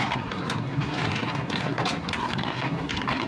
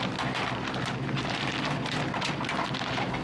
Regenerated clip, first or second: first